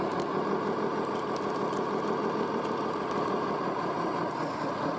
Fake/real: real